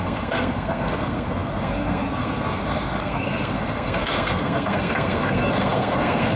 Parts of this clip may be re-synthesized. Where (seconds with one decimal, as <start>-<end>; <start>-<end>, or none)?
0.0-6.4